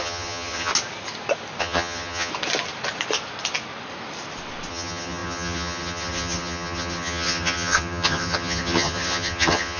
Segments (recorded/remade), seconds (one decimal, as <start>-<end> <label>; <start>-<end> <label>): 0.0-0.7 remade; 0.7-1.6 recorded; 1.6-2.3 remade; 2.3-4.7 recorded; 4.7-9.8 remade